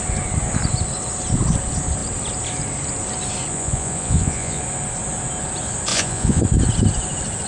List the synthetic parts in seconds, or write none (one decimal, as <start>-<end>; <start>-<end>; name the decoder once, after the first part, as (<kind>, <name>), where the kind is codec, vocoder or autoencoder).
3.5-4.6 (vocoder, Vocos); 5.9-6.4